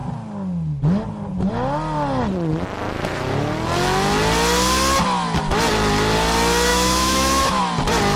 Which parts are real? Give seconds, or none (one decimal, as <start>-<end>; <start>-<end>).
0.0-6.7; 7.6-8.2